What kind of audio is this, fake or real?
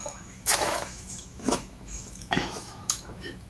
fake